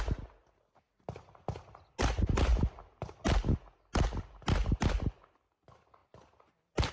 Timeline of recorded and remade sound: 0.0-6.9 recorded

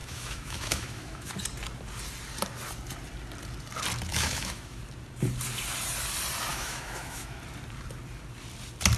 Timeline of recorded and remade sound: 0.0-1.3 remade; 1.3-4.1 recorded; 4.1-4.8 remade; 4.8-6.5 recorded; 6.5-7.4 remade; 7.4-9.0 recorded